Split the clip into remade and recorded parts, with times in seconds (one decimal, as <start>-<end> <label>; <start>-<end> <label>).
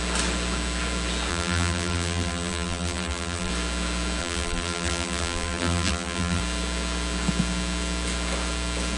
0.0-1.3 recorded; 1.3-3.5 remade; 3.5-4.2 recorded; 4.2-6.4 remade; 6.4-9.0 recorded